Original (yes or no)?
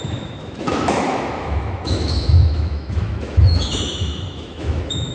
no